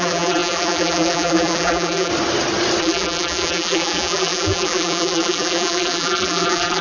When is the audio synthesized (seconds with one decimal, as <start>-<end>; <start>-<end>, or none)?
0.0-2.1; 2.8-6.8